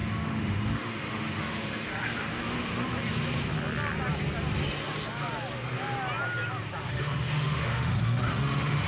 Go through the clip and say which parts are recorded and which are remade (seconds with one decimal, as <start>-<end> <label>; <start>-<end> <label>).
0.0-1.9 remade; 1.9-6.9 recorded; 6.9-8.9 remade